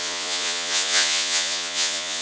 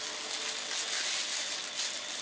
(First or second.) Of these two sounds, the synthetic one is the first